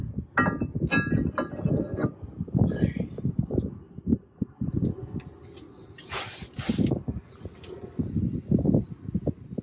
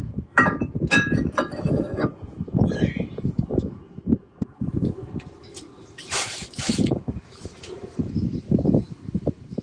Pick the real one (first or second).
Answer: first